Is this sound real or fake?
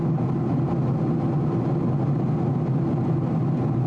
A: real